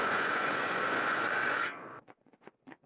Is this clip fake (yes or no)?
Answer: yes